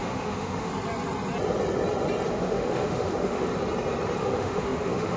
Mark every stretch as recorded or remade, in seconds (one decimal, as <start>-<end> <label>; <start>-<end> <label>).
0.0-0.7 remade; 0.7-2.3 recorded; 2.3-3.5 remade; 3.5-4.2 recorded; 4.2-5.2 remade